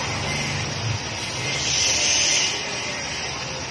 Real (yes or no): yes